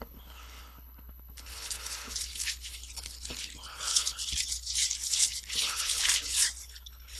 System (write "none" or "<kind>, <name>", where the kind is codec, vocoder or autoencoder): codec, HILCodec